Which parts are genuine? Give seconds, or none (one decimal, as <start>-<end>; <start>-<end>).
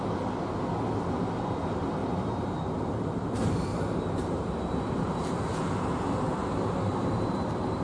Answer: 0.0-2.0; 2.6-3.7; 5.4-6.4; 7.3-7.8